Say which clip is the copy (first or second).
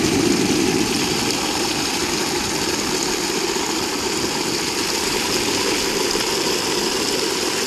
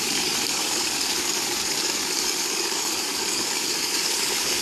second